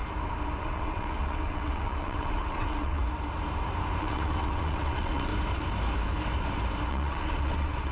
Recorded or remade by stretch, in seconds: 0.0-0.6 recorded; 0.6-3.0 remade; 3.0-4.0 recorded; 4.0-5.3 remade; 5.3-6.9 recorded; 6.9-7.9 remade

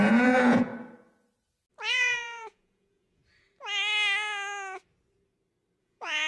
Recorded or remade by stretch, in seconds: 0.0-0.7 remade; 0.7-1.9 recorded; 1.9-3.2 remade; 3.2-5.8 recorded; 5.8-6.3 remade

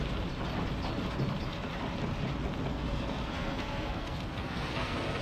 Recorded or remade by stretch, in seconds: 0.0-2.7 recorded; 2.7-5.2 remade